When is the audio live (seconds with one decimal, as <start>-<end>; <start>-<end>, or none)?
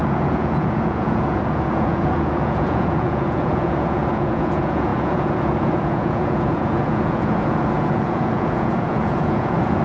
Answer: none